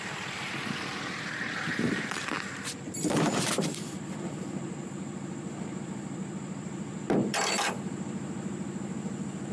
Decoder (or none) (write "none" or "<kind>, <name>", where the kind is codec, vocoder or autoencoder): vocoder, BigVGAN v2